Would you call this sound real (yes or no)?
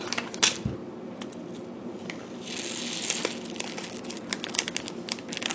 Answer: yes